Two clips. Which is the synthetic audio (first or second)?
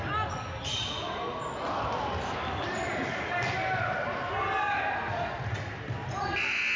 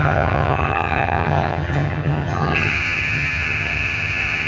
second